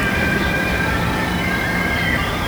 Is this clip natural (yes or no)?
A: yes